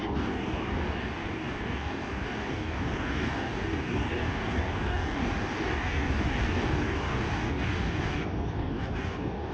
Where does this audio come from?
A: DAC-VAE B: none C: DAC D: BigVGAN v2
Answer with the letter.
C